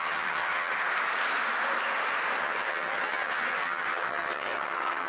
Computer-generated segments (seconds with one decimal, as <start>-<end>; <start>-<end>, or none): 0.0-0.8; 2.4-5.1